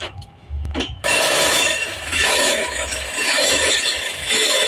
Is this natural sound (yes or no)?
no